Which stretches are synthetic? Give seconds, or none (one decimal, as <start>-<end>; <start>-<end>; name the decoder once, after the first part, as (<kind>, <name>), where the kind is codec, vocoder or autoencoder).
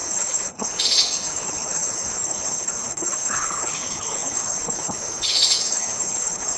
0.0-6.6 (codec, HILCodec)